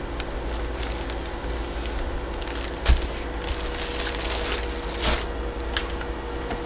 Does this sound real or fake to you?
real